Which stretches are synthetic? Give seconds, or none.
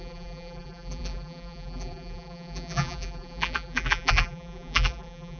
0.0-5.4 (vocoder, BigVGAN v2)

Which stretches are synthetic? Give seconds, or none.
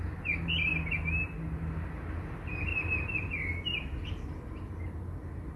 none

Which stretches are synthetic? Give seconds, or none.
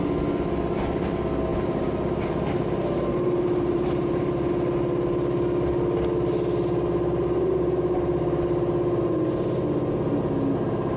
1.5-4.5 (vocoder, BigVGAN v2)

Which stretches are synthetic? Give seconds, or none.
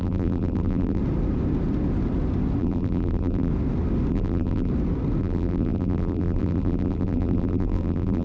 0.0-1.0 (vocoder, BigVGAN v2); 2.6-3.5; 4.1-4.7; 5.2-8.2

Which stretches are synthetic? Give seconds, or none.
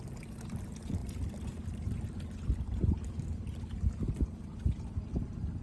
none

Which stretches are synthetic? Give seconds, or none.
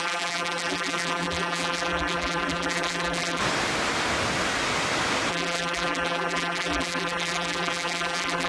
0.0-3.4 (vocoder, BigVGAN v2); 5.3-8.5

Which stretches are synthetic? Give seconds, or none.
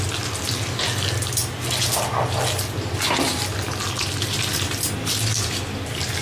none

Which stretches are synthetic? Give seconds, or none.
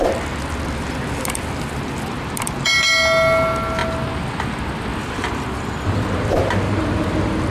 4.9-6.3 (vocoder, BigVGAN v2)